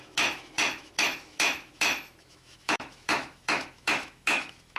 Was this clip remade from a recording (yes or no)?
yes